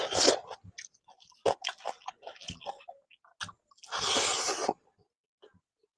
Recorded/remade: recorded